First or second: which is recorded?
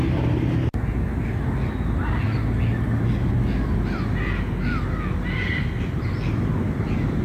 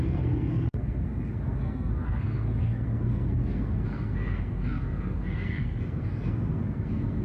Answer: first